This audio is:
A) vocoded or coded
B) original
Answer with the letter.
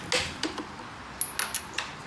B